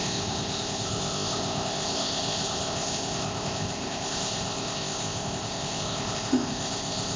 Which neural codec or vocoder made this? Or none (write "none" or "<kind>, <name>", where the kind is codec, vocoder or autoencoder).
codec, ZipCodec